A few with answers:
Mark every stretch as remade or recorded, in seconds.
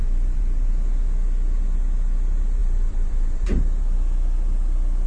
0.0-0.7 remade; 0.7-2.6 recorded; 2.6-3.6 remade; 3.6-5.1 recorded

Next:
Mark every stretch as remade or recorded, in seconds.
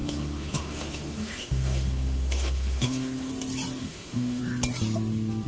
0.0-3.3 remade; 3.3-3.8 recorded; 3.8-4.4 remade; 4.4-5.5 recorded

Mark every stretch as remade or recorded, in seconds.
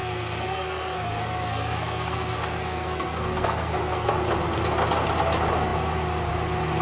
0.0-4.1 remade; 4.1-6.8 recorded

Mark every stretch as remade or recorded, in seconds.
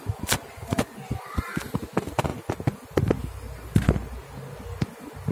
0.0-5.3 recorded